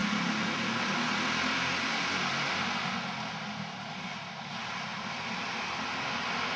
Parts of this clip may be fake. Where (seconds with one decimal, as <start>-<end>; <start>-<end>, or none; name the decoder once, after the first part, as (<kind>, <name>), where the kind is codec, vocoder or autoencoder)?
none